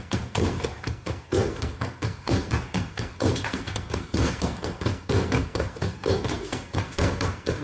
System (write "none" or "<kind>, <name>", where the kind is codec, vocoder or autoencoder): codec, SNAC